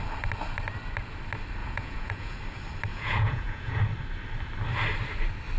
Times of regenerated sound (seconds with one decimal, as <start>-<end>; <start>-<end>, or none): 1.6-2.4; 2.9-3.8